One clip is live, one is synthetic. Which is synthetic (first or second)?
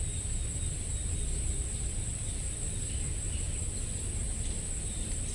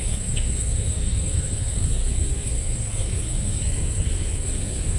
second